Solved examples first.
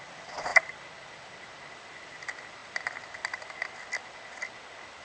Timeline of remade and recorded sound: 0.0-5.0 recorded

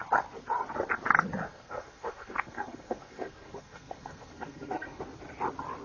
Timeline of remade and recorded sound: 0.0-1.5 recorded; 1.5-5.0 remade; 5.0-5.8 recorded